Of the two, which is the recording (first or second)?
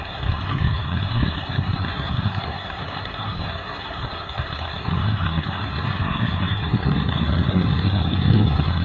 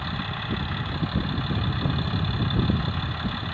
second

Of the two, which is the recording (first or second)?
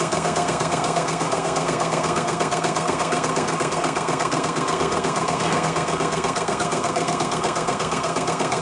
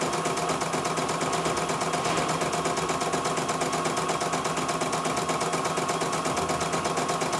second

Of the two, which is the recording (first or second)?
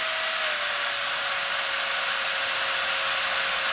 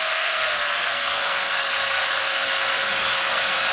first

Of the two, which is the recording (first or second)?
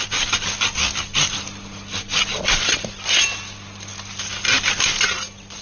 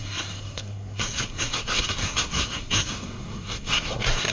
first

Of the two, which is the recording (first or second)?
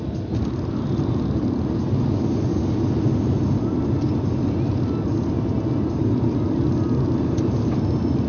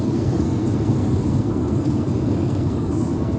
first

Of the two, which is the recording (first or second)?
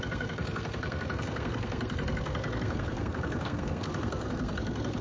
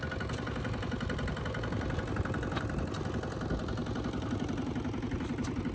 second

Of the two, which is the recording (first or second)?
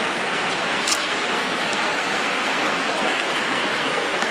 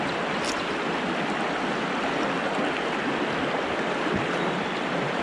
second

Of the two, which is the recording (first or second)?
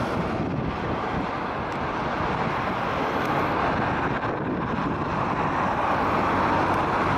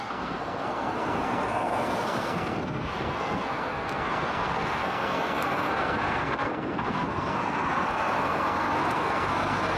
first